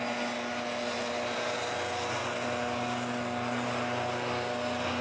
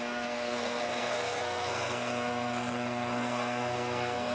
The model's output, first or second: second